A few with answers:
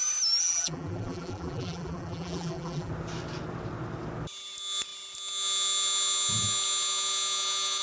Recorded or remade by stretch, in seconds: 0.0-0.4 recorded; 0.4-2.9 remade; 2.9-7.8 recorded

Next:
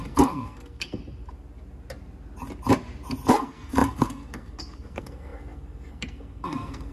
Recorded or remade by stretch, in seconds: 0.0-1.0 remade; 1.0-3.3 recorded; 3.3-6.9 remade

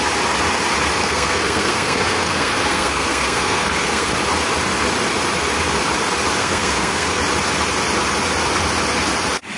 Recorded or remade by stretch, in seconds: 0.0-1.0 recorded; 1.0-4.1 remade; 4.1-6.4 recorded; 6.4-7.2 remade; 7.2-9.6 recorded

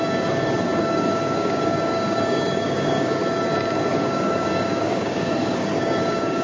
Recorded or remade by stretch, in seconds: 0.0-3.2 remade; 3.2-3.9 recorded; 3.9-6.4 remade

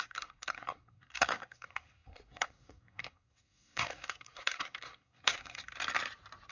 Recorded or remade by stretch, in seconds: 0.0-5.7 remade; 5.7-6.5 recorded